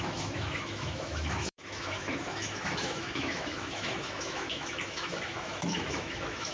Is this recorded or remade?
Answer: remade